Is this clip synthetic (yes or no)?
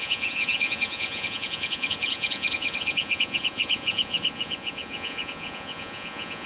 yes